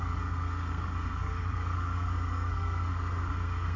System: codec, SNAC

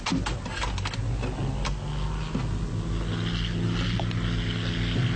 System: none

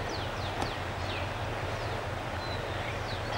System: none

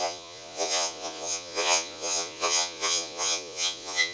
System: vocoder, Vocos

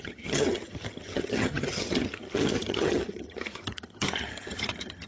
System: vocoder, HiFi-GAN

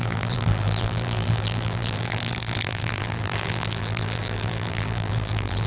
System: vocoder, BigVGAN v2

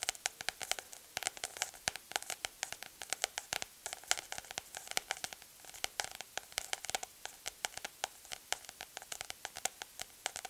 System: none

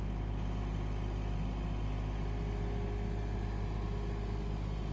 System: none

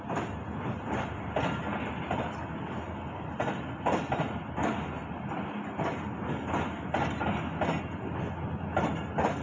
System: none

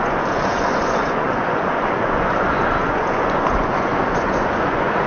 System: vocoder, Vocos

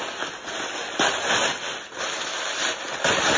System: none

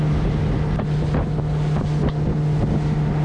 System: none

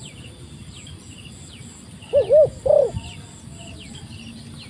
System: none